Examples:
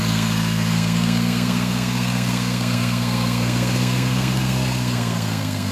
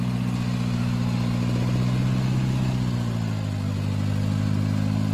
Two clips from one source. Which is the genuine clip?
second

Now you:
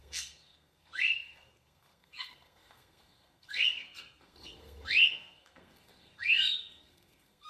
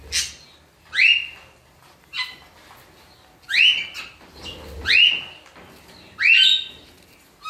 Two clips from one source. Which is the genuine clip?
second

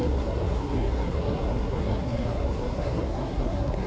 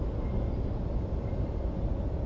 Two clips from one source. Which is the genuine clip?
second